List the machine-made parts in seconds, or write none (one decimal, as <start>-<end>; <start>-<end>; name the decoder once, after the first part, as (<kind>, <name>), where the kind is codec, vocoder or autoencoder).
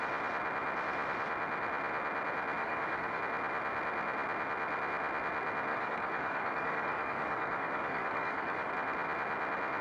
2.6-3.2 (codec, DAC); 5.7-8.7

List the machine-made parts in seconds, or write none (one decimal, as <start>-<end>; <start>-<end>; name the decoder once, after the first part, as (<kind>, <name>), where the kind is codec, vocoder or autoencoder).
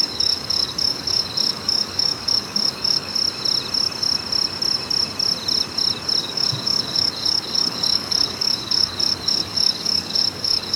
0.0-3.1 (codec, DAC); 6.2-10.8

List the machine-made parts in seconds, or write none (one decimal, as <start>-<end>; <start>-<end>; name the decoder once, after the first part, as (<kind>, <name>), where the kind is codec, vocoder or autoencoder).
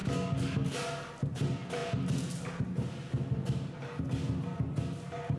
0.0-1.1 (codec, DAC)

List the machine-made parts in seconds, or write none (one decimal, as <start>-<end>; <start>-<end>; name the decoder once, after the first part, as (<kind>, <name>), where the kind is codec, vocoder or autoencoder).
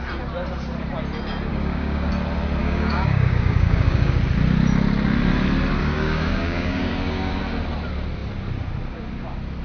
1.5-2.1 (codec, DAC); 2.6-4.2; 5.8-7.4